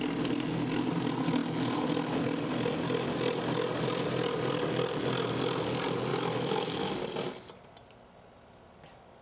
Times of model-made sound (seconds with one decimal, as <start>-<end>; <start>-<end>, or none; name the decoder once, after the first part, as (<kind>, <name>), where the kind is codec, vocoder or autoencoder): 6.1-6.9 (autoencoder, DAC-VAE)